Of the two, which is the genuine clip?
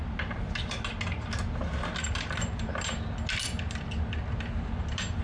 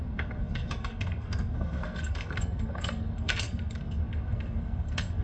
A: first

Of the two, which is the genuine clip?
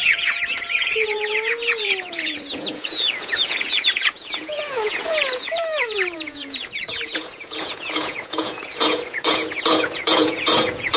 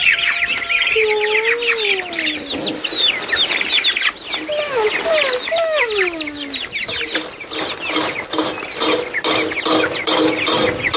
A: second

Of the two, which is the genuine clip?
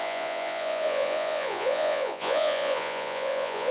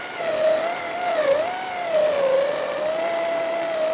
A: second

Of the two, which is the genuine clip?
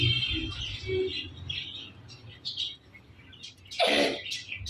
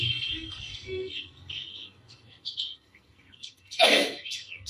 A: first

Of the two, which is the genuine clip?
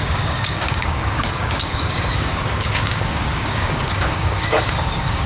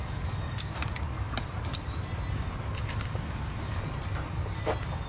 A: second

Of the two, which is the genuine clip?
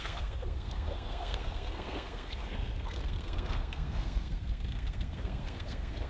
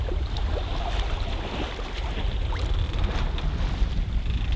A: second